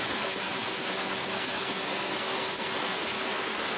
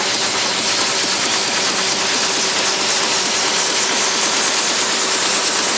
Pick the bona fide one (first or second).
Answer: second